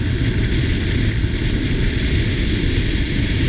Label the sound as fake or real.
real